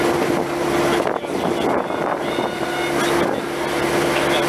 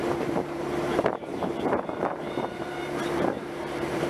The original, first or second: first